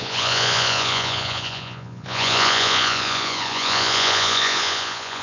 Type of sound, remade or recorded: remade